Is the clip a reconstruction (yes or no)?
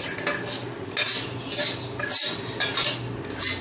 no